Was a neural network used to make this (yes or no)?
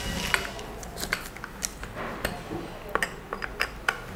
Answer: no